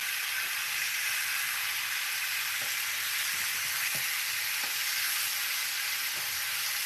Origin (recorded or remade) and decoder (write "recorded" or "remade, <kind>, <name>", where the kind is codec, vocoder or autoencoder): recorded